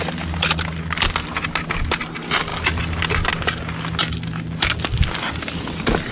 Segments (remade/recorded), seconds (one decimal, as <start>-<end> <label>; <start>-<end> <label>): 0.0-6.1 recorded